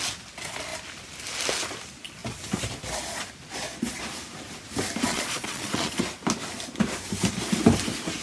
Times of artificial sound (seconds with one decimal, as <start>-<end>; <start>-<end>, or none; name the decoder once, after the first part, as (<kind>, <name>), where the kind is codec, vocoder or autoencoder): 5.1-6.0 (vocoder, Vocos)